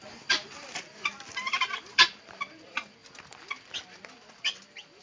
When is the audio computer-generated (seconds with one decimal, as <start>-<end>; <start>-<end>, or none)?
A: none